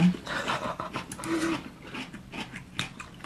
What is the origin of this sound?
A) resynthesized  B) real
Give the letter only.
B